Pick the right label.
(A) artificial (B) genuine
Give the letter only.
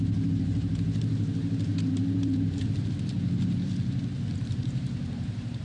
A